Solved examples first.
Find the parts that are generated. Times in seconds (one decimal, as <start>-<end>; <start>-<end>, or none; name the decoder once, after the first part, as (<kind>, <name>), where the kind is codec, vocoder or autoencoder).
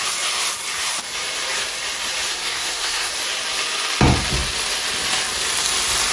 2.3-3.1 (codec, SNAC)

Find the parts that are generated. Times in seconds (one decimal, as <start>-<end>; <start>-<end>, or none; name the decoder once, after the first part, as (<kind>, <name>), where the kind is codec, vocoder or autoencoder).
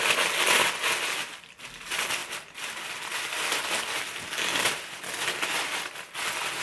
none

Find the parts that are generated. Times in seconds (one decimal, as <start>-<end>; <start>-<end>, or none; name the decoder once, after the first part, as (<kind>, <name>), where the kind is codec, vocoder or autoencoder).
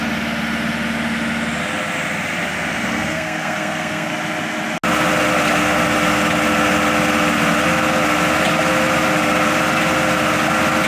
2.7-4.1 (codec, SNAC)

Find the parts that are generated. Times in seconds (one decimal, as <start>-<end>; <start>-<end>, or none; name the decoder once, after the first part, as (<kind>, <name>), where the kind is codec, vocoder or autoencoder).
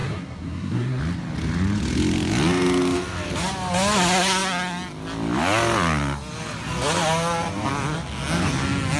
0.0-1.0 (codec, SNAC)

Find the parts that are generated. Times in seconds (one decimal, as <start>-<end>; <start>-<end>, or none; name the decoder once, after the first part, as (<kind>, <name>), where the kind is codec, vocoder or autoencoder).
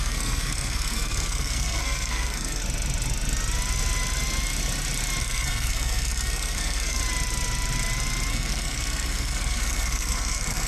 0.0-2.6 (codec, SNAC); 5.2-7.0; 8.3-10.7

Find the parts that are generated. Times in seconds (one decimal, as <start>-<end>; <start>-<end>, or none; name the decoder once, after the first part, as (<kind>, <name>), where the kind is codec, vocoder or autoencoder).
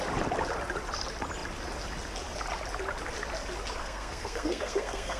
3.8-5.2 (codec, SNAC)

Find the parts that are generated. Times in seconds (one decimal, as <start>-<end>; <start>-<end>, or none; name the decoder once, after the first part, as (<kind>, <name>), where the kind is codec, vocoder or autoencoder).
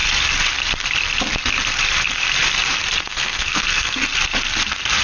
3.0-4.0 (codec, SNAC)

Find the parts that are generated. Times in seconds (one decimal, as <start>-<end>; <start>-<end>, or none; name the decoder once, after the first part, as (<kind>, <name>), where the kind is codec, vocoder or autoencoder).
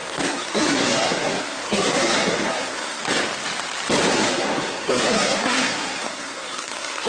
0.0-3.0 (codec, SNAC); 4.1-7.1